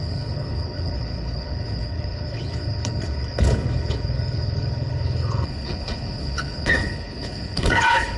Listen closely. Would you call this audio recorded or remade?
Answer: remade